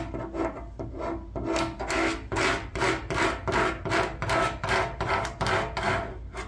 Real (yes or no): yes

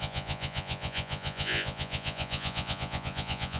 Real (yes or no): no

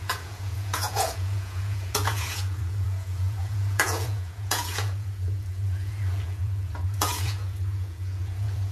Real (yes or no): no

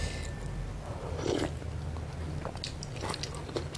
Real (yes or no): yes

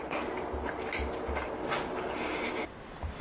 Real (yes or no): yes